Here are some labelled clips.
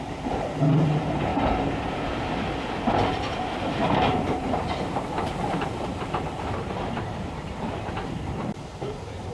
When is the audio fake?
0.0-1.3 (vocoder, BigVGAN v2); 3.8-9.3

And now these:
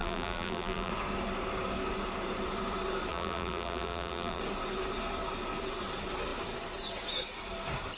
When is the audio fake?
0.0-0.9 (vocoder, BigVGAN v2); 3.1-4.4

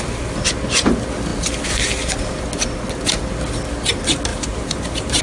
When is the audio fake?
4.3-5.2 (vocoder, BigVGAN v2)

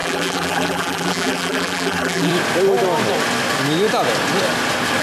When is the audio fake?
0.0-2.3 (vocoder, BigVGAN v2)

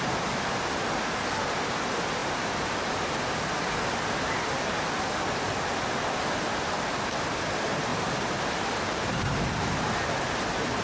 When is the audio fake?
2.2-3.3 (vocoder, BigVGAN v2); 7.9-9.8

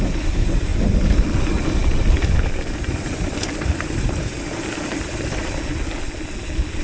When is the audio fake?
0.7-1.4 (vocoder, BigVGAN v2); 1.8-5.4

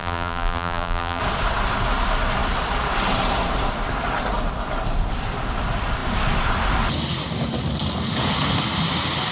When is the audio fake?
0.0-1.2 (vocoder, BigVGAN v2)

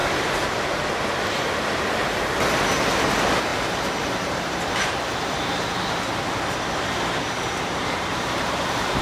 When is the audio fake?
0.0-0.9 (vocoder, BigVGAN v2); 2.0-2.7; 3.5-6.8